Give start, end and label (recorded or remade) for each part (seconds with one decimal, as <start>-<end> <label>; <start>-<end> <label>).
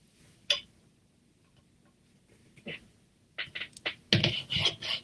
0.0-5.0 recorded